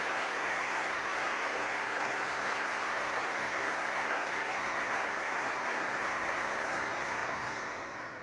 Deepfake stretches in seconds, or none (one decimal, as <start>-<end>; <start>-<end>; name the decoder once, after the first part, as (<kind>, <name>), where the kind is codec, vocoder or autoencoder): 0.0-8.2 (codec, SNAC)